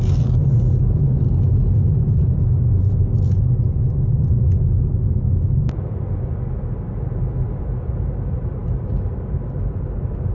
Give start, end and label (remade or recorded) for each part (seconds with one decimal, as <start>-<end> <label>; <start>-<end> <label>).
0.0-0.4 recorded; 0.4-1.3 remade; 1.3-8.6 recorded; 8.6-9.1 remade; 9.1-10.3 recorded